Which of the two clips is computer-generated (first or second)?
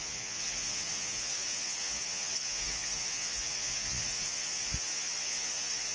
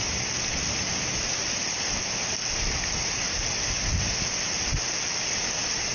first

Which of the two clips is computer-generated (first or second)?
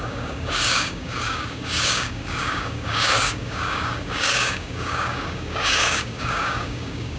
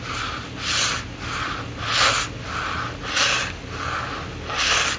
first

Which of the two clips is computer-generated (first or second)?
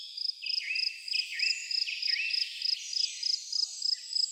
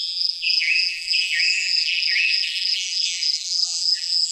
second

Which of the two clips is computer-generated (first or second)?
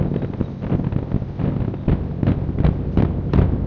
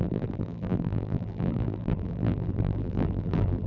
second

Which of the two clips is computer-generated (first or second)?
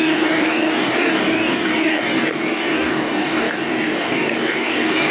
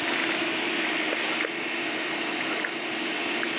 first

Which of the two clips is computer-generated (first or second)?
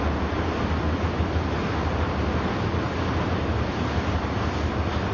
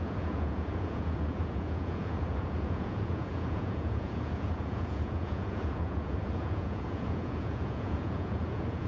second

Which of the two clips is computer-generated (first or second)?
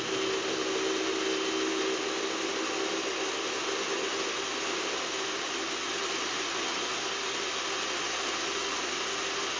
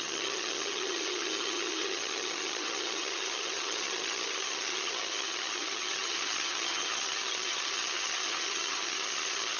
second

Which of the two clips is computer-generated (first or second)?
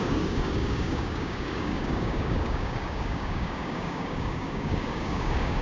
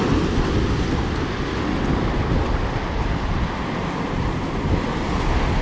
first